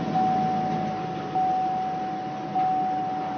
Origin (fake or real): real